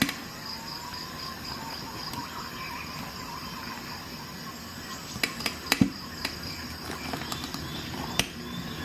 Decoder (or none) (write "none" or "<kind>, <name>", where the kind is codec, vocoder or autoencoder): none